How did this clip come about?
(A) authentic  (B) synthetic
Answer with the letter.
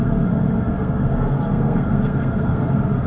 B